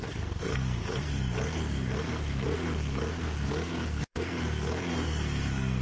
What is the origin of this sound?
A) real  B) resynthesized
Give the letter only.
B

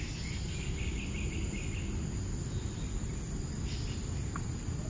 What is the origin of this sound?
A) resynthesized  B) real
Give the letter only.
B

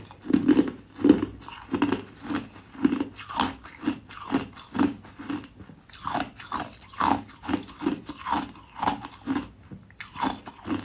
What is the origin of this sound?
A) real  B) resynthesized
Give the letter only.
A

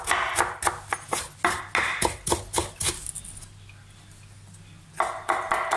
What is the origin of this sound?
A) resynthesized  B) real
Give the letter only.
B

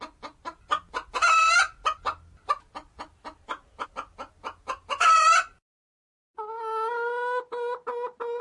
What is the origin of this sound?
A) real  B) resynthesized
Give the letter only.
A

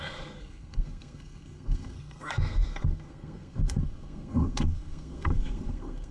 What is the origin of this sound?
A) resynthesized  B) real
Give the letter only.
A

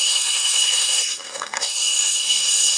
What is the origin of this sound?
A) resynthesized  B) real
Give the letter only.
A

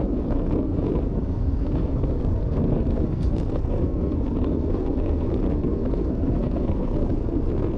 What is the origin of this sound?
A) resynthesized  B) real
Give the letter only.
A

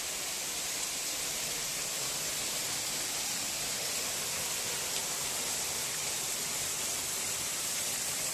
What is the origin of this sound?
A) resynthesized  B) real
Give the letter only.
B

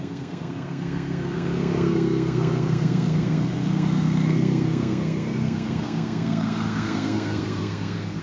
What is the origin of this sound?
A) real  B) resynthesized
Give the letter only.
B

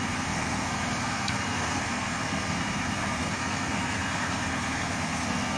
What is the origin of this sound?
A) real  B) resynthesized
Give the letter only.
B